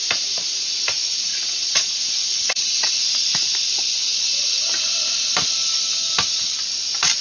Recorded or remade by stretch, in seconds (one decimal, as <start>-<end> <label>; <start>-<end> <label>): 0.0-1.3 recorded; 1.3-1.9 remade; 1.9-2.3 recorded; 2.3-2.9 remade; 2.9-7.2 recorded